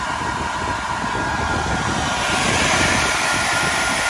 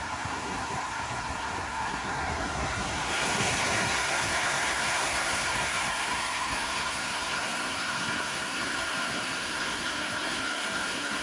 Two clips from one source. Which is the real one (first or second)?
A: first